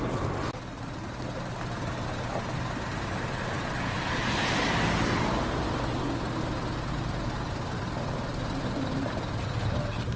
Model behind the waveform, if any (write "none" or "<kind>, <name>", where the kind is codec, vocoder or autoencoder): none